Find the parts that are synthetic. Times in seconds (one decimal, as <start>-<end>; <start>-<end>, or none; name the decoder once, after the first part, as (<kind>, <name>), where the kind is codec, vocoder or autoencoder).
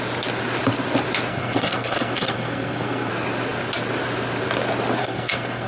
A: 1.3-3.1 (codec, SNAC); 5.0-5.7